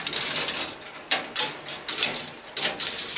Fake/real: real